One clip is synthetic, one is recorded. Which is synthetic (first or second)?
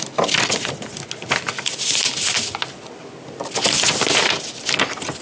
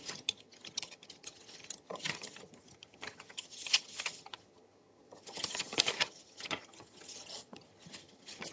second